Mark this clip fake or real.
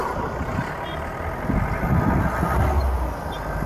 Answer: real